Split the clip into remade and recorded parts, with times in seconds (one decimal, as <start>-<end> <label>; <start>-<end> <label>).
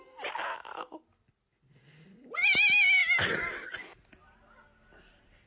0.0-5.5 recorded